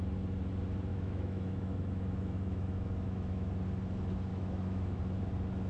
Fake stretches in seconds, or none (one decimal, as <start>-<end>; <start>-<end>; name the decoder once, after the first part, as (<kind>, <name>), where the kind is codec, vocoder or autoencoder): 0.9-3.5 (autoencoder, DAC-VAE); 4.3-5.0

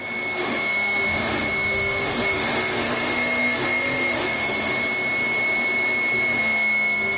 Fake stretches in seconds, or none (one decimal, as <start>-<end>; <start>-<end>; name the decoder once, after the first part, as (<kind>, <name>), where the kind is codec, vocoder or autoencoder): 0.4-4.7 (autoencoder, DAC-VAE); 6.4-7.2

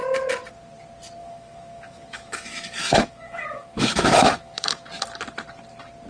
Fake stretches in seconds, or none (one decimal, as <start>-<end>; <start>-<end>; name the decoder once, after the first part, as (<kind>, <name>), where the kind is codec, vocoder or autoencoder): 1.2-4.9 (autoencoder, DAC-VAE)

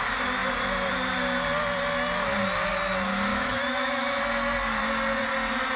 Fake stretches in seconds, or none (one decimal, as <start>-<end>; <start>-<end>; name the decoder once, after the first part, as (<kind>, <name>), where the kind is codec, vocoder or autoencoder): 3.3-4.2 (autoencoder, DAC-VAE)

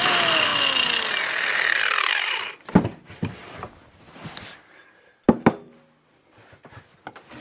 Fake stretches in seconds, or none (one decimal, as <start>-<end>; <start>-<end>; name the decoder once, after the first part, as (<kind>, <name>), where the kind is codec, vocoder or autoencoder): none

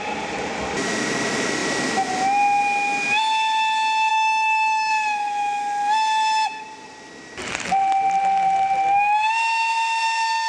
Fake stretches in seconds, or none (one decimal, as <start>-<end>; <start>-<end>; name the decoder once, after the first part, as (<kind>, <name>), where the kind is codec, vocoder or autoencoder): 4.1-4.9 (autoencoder, DAC-VAE)